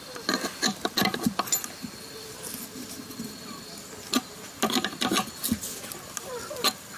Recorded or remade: recorded